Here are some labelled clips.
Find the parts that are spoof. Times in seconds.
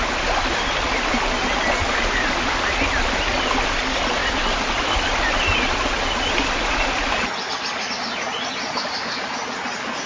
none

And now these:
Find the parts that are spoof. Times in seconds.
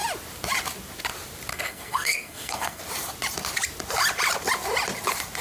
1.5-2.8 (codec, SNAC)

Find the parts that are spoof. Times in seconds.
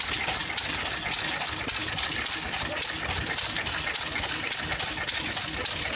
none